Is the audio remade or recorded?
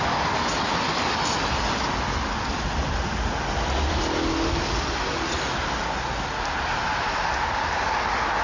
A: recorded